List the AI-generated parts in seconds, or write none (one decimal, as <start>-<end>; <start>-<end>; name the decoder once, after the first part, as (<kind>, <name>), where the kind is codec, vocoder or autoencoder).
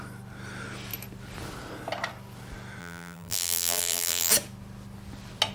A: 2.8-4.3 (vocoder, BigVGAN v2)